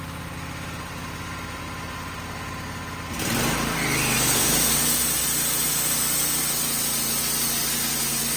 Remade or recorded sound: recorded